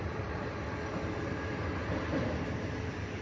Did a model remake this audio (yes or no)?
yes